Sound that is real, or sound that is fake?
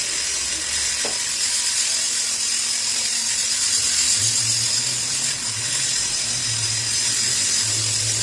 real